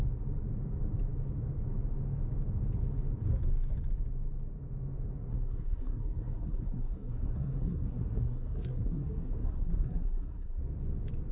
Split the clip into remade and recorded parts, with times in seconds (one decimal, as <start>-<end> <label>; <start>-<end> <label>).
0.0-5.3 recorded; 5.3-10.6 remade; 10.6-11.3 recorded

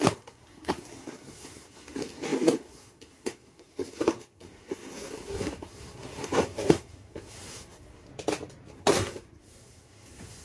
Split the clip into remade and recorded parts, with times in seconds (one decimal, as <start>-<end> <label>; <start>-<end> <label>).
0.0-8.1 remade; 8.1-8.7 recorded; 8.7-10.4 remade

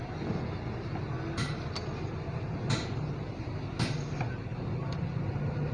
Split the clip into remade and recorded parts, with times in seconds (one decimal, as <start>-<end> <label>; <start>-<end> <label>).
0.0-5.7 recorded

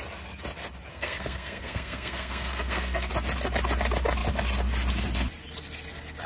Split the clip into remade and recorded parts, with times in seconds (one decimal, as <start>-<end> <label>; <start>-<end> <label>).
0.0-0.9 recorded; 0.9-3.1 remade; 3.1-6.3 recorded

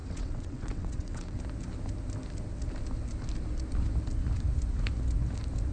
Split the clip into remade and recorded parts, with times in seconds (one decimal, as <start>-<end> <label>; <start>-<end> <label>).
0.0-1.4 remade; 1.4-5.7 recorded